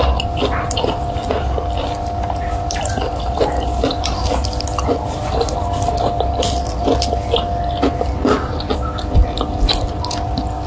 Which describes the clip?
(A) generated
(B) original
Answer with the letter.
B